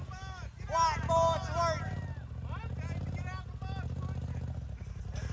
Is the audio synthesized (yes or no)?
no